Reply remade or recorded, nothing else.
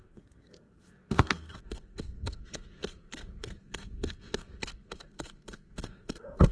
remade